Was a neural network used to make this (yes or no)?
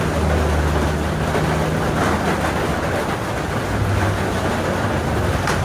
no